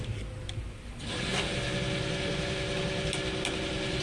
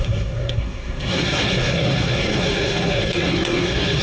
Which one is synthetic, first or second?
second